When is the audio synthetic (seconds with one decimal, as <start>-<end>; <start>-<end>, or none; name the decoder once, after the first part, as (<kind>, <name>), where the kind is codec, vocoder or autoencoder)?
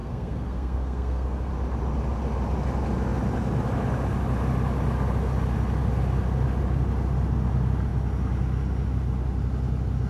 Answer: 0.0-1.5 (codec, SNAC)